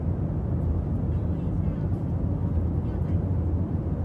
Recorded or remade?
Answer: recorded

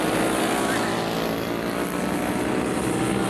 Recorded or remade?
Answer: recorded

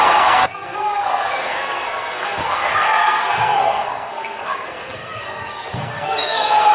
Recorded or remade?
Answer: remade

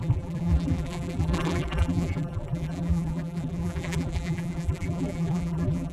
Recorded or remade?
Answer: remade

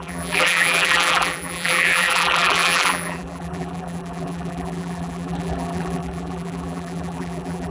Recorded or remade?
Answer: remade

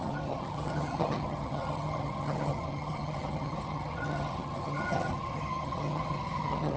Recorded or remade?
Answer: remade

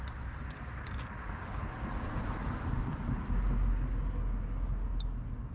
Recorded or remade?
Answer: recorded